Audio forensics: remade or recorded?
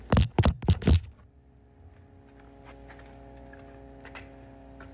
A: recorded